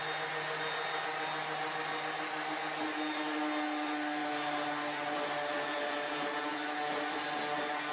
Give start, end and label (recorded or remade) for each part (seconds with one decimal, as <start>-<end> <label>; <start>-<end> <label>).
0.0-7.9 recorded